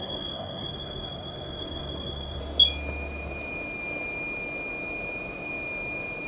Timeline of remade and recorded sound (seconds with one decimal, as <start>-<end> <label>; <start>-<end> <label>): 0.0-2.4 remade; 2.4-6.3 recorded